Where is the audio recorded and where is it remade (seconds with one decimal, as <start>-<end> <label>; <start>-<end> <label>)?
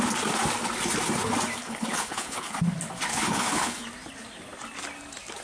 0.0-1.6 recorded; 1.6-2.6 remade; 2.6-3.1 recorded; 3.1-3.8 remade; 3.8-5.4 recorded